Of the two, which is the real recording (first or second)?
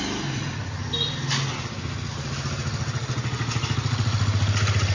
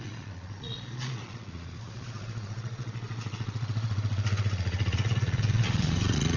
first